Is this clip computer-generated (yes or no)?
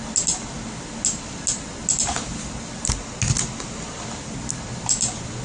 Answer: no